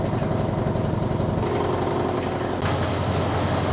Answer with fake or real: real